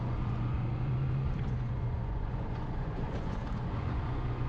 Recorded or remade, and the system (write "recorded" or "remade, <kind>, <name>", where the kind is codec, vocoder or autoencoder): remade, vocoder, Vocos